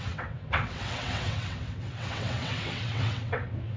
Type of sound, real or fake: fake